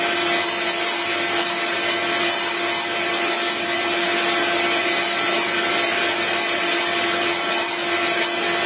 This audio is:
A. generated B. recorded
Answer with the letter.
B